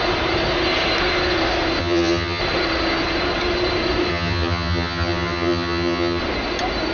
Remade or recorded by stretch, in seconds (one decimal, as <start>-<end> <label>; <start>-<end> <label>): 0.0-1.8 recorded; 1.8-2.4 remade; 2.4-4.1 recorded; 4.1-6.2 remade; 6.2-6.9 recorded